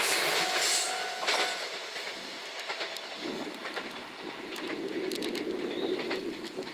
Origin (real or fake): real